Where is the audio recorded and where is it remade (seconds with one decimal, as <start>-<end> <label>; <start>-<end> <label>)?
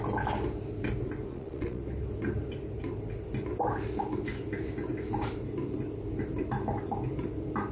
0.0-1.3 recorded; 1.3-1.8 remade; 1.8-7.7 recorded